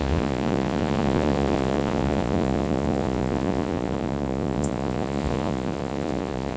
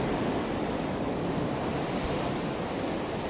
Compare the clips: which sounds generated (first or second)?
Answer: first